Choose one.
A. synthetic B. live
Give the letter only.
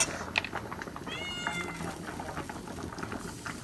B